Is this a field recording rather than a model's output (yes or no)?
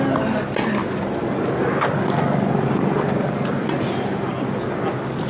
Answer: yes